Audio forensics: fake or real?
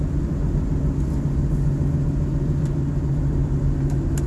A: real